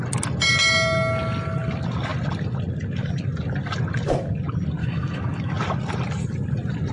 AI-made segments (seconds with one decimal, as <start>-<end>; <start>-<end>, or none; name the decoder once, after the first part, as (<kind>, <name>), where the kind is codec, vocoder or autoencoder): 4.8-5.5 (autoencoder, DAC-VAE)